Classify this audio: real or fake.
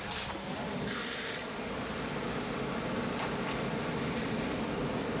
real